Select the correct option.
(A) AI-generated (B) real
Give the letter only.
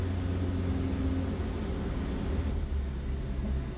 B